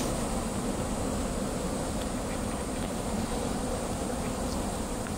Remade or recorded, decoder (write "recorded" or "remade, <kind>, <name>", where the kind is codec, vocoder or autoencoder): recorded